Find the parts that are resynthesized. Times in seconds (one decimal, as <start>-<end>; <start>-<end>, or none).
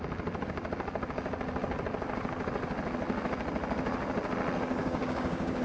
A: 4.8-5.6